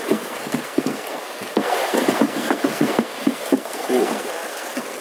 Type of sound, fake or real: fake